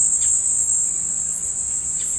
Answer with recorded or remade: recorded